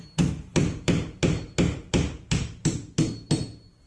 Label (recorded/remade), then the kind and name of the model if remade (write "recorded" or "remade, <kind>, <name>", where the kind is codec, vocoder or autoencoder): recorded